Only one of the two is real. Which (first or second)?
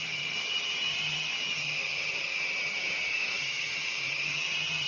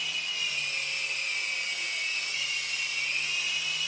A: second